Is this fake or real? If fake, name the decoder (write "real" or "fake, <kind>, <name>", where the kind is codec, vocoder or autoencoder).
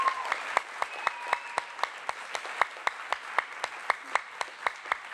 real